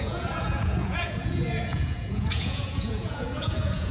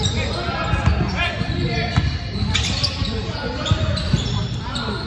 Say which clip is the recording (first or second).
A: second